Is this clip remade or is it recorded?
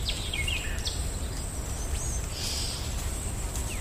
recorded